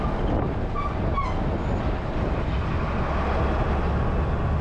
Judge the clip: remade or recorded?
recorded